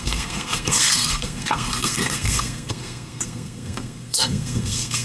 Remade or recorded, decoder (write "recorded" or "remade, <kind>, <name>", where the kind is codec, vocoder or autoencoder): remade, codec, SNAC